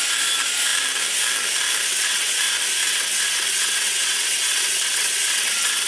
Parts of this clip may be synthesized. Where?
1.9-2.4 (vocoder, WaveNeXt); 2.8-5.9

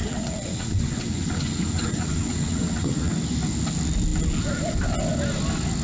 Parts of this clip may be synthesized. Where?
0.0-3.1 (vocoder, WaveNeXt)

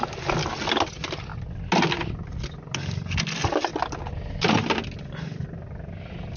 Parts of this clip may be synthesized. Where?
none

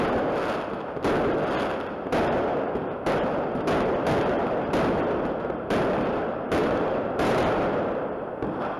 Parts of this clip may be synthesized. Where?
6.2-7.4 (vocoder, BigVGAN v2)

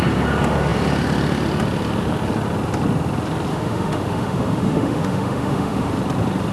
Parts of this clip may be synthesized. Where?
3.5-5.9 (autoencoder, DAC-VAE)

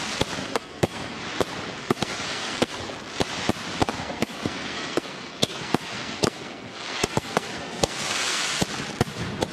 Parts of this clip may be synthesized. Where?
0.4-1.2 (codec, SNAC); 1.8-2.9; 3.8-8.6

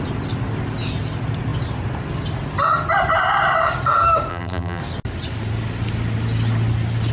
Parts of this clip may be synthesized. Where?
4.3-4.8 (vocoder, BigVGAN v2)